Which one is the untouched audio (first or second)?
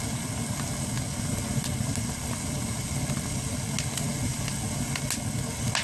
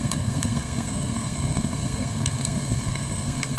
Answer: first